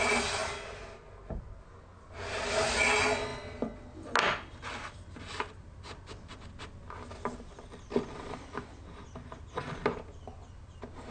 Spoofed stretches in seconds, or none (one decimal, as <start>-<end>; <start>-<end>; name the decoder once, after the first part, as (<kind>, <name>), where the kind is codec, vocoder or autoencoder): none